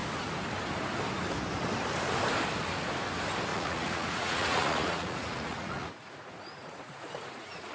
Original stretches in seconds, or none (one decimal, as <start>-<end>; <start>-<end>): 0.0-3.5